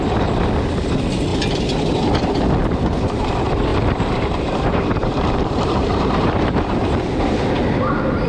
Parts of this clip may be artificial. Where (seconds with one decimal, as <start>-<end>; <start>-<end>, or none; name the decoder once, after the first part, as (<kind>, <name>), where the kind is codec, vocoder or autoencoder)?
3.7-7.5 (vocoder, BigVGAN v2)